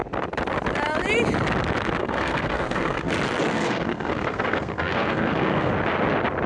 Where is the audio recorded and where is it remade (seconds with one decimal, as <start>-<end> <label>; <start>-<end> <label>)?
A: 0.0-2.0 recorded; 2.0-3.1 remade; 3.1-3.5 recorded; 3.5-5.7 remade; 5.7-6.5 recorded